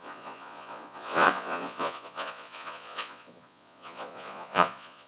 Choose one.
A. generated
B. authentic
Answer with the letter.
A